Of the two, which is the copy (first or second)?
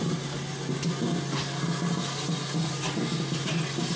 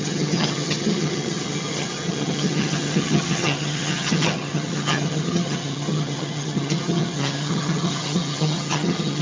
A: second